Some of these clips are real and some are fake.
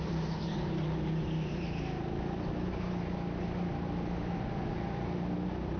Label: real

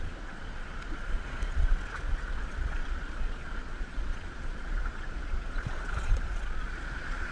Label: fake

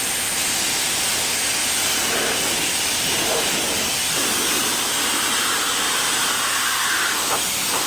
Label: real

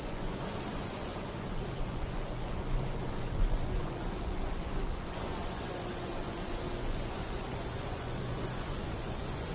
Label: fake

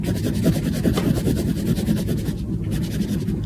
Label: real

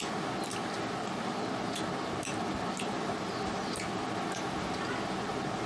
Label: real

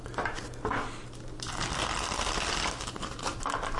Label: real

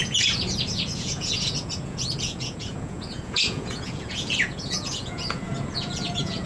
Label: fake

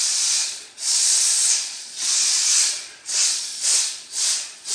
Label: fake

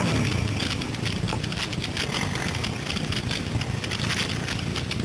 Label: real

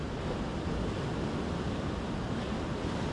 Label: real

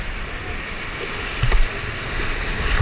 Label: real